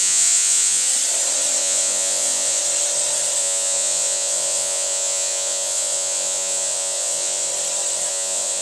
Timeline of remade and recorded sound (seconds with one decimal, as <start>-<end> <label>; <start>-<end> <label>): 0.0-0.9 remade; 0.9-1.6 recorded; 1.6-2.6 remade; 2.6-3.4 recorded; 3.4-7.5 remade; 7.5-8.1 recorded; 8.1-8.6 remade